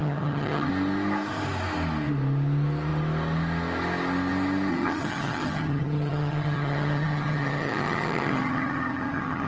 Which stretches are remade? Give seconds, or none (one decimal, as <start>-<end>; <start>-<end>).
0.0-0.7; 4.7-9.5